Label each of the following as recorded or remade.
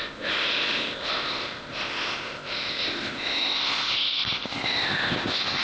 remade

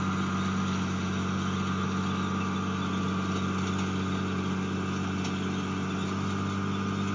recorded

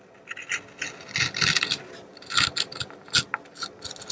recorded